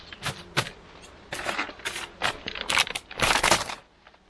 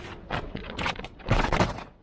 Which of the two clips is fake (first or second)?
second